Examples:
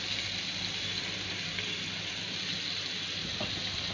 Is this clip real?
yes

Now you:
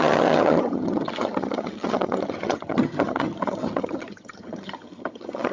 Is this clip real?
no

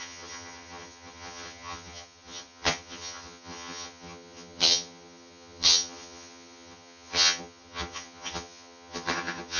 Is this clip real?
no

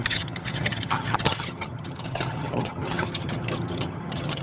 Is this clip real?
no